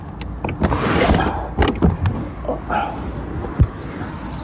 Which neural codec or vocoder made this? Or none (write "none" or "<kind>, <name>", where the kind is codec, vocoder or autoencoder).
none